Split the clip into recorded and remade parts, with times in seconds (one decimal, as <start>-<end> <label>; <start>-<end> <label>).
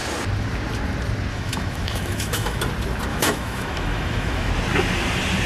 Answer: 0.0-1.3 recorded; 1.3-2.6 remade; 2.6-3.1 recorded; 3.1-4.5 remade; 4.5-5.5 recorded